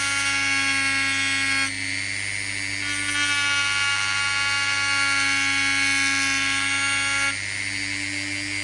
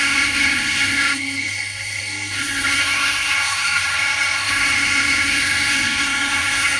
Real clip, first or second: first